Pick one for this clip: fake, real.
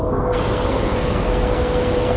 fake